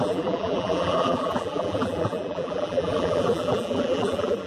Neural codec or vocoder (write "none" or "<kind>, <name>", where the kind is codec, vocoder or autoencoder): vocoder, BigVGAN v2